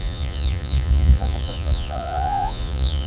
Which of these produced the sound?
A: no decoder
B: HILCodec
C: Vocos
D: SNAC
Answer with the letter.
C